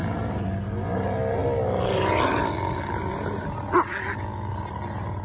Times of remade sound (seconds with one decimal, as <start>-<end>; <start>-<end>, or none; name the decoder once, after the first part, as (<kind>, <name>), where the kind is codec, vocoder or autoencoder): none